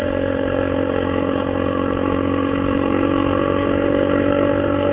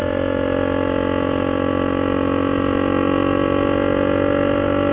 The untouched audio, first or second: second